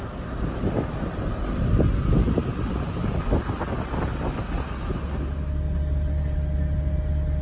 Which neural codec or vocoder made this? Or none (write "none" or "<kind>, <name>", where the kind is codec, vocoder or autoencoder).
none